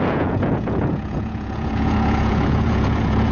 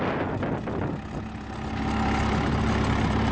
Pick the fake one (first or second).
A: first